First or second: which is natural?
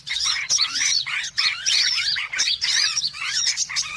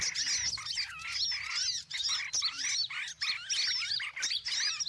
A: second